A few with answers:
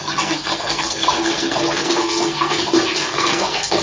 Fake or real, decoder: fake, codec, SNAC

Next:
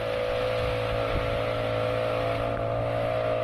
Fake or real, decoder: real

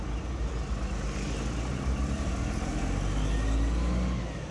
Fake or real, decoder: real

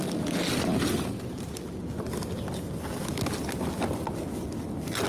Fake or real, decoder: real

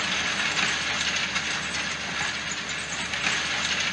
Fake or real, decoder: real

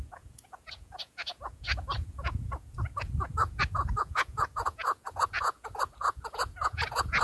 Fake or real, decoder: fake, vocoder, Vocos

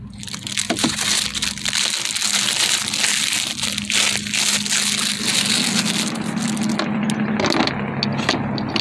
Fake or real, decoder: real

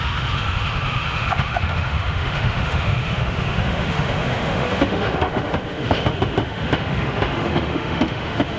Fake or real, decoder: fake, autoencoder, DAC-VAE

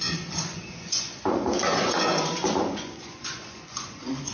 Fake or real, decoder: fake, vocoder, Vocos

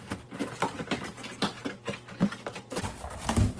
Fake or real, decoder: real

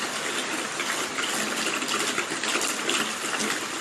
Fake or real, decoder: real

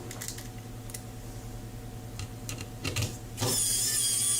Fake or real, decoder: real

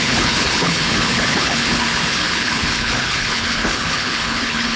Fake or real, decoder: fake, codec, HILCodec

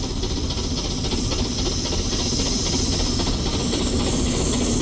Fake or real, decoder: real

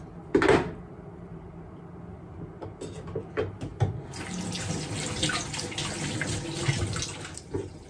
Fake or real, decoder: real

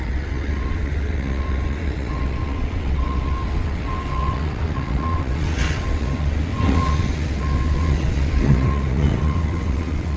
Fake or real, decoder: fake, vocoder, WaveNeXt